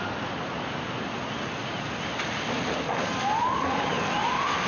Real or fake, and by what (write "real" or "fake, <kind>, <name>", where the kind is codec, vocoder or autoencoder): real